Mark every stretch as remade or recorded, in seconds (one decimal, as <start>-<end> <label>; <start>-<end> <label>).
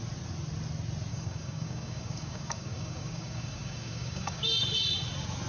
0.0-1.1 recorded; 1.1-4.4 remade; 4.4-5.5 recorded